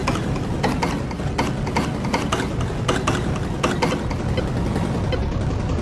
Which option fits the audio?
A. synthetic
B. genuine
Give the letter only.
B